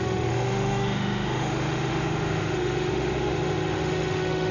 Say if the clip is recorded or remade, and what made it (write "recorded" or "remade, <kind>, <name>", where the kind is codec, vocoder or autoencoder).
remade, autoencoder, DAC-VAE